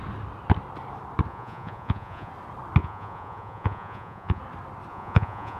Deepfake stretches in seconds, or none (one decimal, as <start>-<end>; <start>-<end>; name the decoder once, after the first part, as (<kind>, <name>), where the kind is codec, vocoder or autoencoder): 1.3-2.3 (vocoder, Vocos); 2.8-4.4; 4.9-5.6